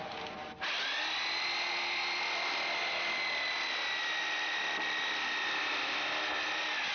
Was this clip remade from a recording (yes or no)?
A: no